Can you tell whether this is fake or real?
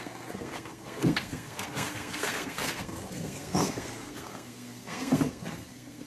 fake